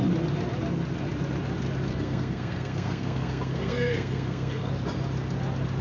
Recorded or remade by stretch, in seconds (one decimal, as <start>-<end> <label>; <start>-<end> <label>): 0.0-1.9 recorded; 1.9-4.7 remade; 4.7-5.8 recorded